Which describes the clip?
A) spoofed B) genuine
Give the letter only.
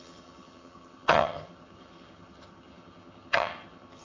A